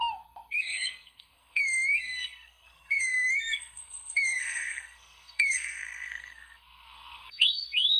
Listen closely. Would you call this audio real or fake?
fake